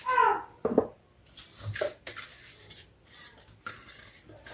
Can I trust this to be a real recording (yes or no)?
yes